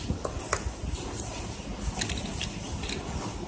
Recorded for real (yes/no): yes